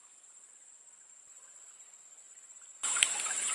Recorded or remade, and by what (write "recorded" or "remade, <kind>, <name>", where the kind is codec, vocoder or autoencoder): remade, vocoder, BigVGAN v2